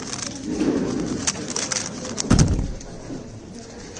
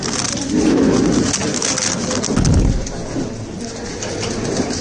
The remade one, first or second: first